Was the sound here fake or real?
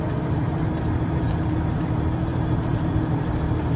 fake